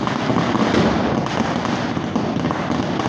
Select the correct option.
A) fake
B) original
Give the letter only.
B